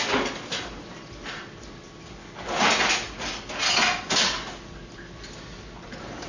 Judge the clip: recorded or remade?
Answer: recorded